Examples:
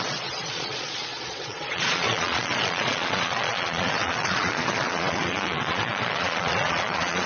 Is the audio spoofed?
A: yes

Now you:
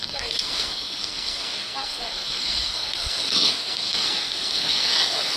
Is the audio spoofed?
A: yes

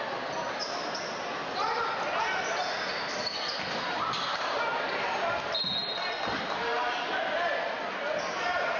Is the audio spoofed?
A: no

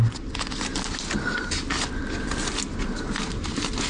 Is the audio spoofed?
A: no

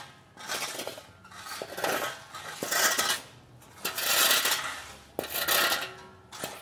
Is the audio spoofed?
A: no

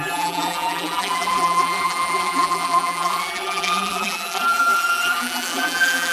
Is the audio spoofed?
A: yes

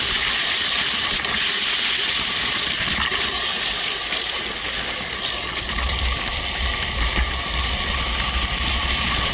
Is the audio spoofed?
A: no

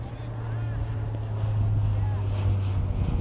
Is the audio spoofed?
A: no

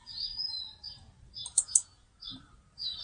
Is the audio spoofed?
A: no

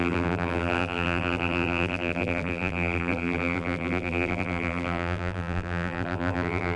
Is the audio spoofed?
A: yes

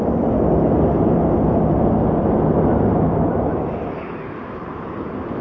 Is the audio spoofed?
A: no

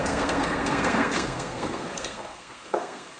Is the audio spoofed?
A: yes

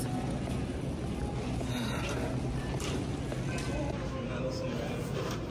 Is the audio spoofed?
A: no